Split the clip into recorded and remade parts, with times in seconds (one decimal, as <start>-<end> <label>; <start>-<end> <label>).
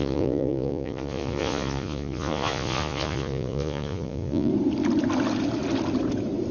0.0-4.5 remade; 4.5-6.5 recorded